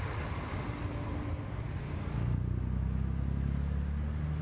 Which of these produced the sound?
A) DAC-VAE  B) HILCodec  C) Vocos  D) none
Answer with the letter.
D